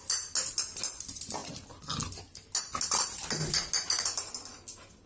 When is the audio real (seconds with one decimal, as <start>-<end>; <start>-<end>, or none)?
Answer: 0.0-5.1